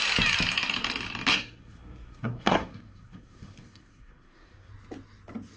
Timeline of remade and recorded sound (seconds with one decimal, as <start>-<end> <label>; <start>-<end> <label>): 0.0-1.3 recorded; 1.3-4.7 remade; 4.7-5.6 recorded